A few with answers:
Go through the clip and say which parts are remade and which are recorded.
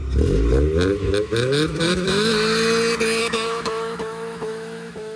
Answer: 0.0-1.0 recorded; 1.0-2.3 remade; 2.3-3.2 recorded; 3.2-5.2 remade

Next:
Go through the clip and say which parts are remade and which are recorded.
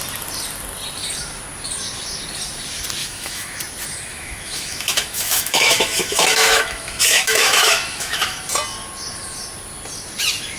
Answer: 0.0-3.0 recorded; 3.0-3.6 remade; 3.6-4.1 recorded; 4.1-8.4 remade; 8.4-10.6 recorded